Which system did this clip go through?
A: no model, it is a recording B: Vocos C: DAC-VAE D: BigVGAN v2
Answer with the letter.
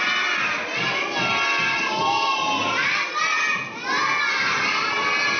A